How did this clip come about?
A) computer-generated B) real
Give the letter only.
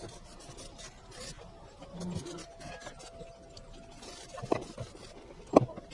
B